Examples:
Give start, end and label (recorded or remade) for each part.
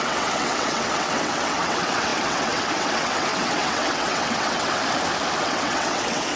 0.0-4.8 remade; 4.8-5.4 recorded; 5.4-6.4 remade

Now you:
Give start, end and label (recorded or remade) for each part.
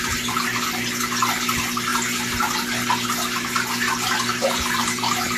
0.0-4.3 recorded; 4.3-5.0 remade; 5.0-5.4 recorded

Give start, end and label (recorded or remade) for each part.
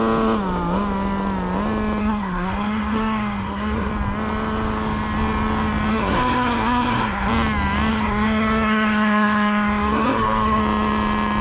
0.0-2.0 recorded; 2.0-3.9 remade; 3.9-5.9 recorded; 5.9-7.3 remade; 7.3-7.9 recorded; 7.9-10.6 remade; 10.6-11.4 recorded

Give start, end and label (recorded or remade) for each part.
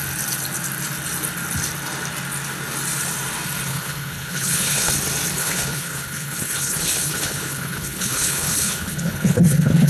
0.0-3.7 recorded; 3.7-4.9 remade; 4.9-5.4 recorded; 5.4-9.9 remade